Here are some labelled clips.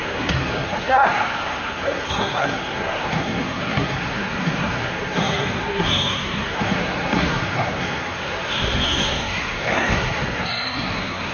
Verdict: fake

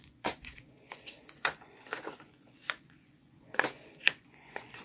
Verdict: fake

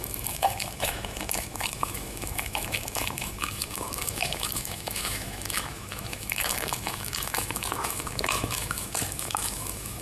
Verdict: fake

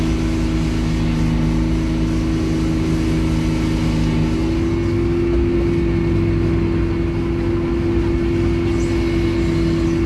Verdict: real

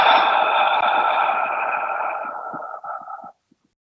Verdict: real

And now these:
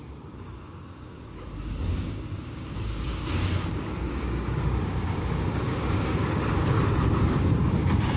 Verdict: fake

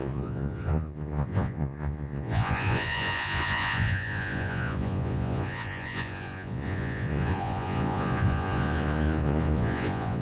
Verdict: fake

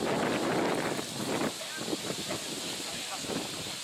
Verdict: real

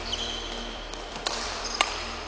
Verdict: fake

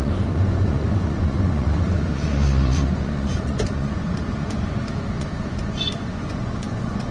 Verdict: fake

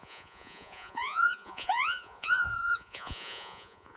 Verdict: fake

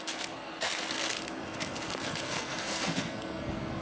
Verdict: fake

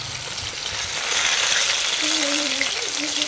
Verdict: real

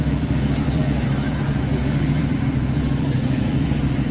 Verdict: fake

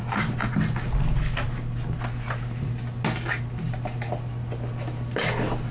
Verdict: real